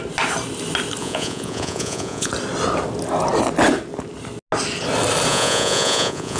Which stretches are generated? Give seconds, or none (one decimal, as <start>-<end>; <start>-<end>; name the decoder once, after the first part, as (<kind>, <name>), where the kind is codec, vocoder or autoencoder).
1.0-2.3 (vocoder, Vocos); 5.3-6.4